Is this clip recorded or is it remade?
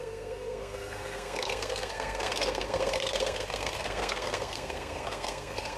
remade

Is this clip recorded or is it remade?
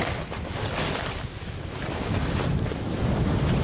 recorded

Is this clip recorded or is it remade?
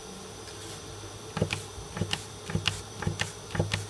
recorded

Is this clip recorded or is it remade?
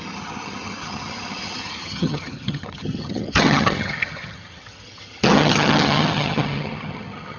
remade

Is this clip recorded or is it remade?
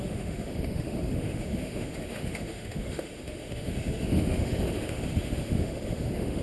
remade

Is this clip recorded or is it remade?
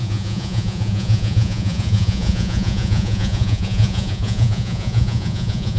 remade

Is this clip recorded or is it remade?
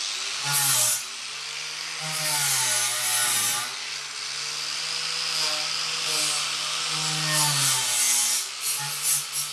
recorded